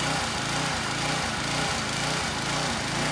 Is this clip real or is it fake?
real